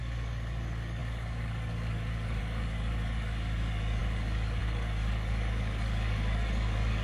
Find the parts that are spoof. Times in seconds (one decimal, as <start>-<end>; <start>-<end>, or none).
0.0-7.0